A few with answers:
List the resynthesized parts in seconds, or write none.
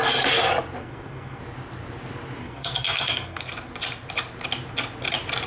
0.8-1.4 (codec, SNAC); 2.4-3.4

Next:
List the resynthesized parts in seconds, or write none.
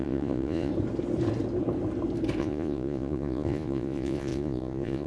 0.0-0.7 (vocoder, Vocos); 2.4-5.1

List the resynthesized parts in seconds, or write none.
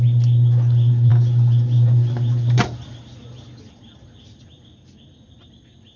none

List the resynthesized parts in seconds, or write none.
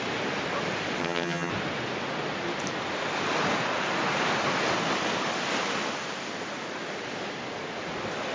1.0-1.5 (vocoder, HiFi-GAN)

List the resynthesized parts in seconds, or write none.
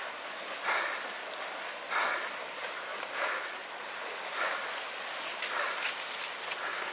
none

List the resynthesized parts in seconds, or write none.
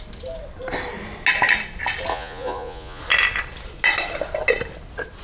2.1-3.0 (vocoder, Vocos)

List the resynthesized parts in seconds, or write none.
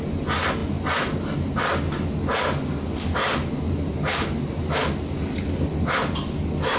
none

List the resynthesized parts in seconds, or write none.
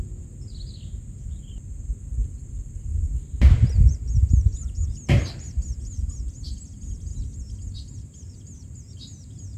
2.2-5.9 (vocoder, BigVGAN v2)